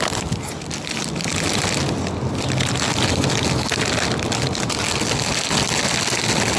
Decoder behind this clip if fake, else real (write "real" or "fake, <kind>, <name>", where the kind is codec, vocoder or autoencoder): real